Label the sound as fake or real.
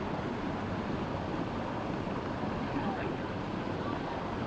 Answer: real